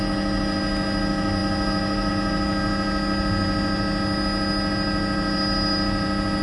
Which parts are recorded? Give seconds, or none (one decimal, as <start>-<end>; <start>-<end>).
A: 0.0-6.4